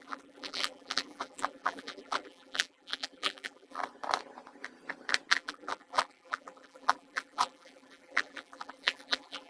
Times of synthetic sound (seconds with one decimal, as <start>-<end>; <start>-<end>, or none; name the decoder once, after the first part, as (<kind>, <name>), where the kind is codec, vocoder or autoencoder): 0.0-3.8 (vocoder, BigVGAN v2); 5.3-9.5